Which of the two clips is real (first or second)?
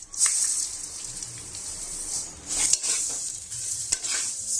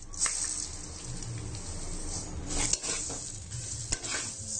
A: second